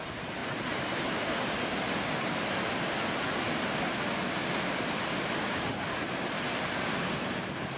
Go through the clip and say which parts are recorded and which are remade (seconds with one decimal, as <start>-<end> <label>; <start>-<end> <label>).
0.0-7.8 recorded